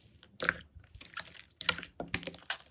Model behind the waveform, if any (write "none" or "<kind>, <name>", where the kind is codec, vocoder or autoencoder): none